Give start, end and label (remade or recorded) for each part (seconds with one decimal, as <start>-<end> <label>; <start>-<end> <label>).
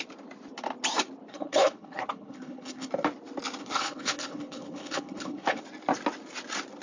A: 0.0-1.3 recorded; 1.3-2.9 remade; 2.9-3.6 recorded; 3.6-5.6 remade; 5.6-6.8 recorded